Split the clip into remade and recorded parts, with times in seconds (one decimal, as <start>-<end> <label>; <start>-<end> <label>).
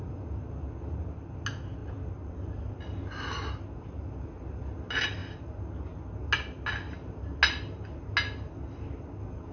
0.0-9.5 recorded